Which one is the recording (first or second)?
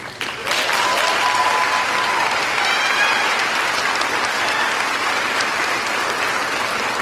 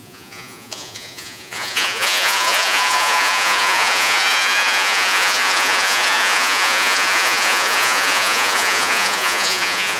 first